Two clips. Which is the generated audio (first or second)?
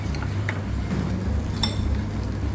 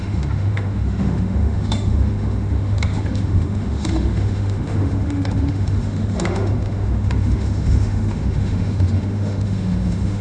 second